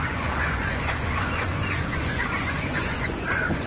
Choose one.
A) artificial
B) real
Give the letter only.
A